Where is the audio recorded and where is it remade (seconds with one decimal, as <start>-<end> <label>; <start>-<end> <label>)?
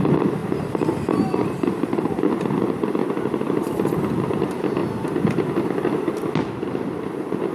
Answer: 0.0-3.0 remade; 3.0-3.6 recorded; 3.6-4.8 remade; 4.8-6.7 recorded; 6.7-7.5 remade